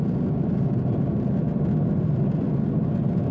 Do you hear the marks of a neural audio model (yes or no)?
no